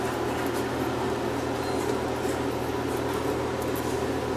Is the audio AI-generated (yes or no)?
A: no